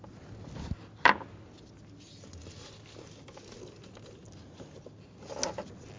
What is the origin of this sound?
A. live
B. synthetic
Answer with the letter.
A